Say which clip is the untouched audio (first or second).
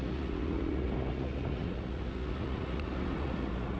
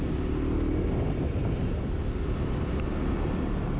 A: second